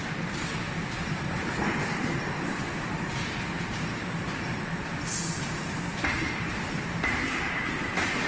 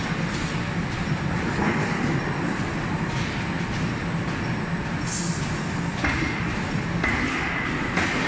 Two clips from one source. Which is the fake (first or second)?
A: first